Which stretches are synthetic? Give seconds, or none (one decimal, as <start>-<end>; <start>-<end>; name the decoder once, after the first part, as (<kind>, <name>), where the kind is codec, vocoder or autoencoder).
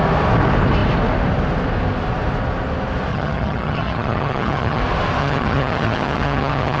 3.1-4.8 (vocoder, HiFi-GAN); 5.2-6.8